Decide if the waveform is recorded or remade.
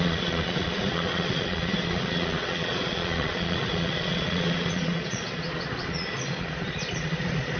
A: remade